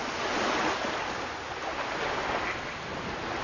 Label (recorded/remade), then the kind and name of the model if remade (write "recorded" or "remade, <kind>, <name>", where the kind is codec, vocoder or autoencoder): recorded